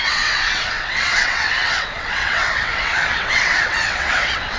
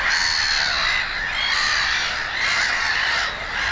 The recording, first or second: second